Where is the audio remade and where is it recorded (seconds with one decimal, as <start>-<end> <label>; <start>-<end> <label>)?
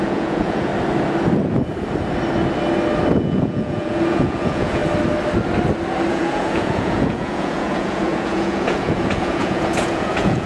0.0-0.7 remade; 0.7-3.1 recorded; 3.1-4.8 remade; 4.8-6.1 recorded; 6.1-10.5 remade